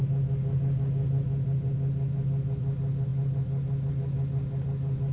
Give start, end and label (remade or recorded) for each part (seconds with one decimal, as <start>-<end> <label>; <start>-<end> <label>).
0.0-5.1 recorded